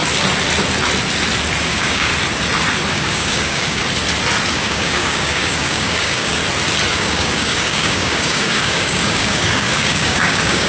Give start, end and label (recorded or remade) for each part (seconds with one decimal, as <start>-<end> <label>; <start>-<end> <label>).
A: 0.0-1.6 recorded; 1.6-2.1 remade; 2.1-2.9 recorded; 2.9-3.8 remade; 3.8-4.5 recorded; 4.5-6.4 remade; 6.4-6.9 recorded; 6.9-10.7 remade